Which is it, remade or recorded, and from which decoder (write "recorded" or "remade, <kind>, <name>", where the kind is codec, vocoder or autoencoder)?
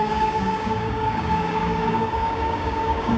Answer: remade, codec, DAC